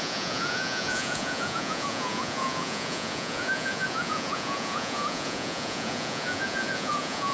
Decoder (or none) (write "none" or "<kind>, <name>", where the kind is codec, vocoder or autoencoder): vocoder, Vocos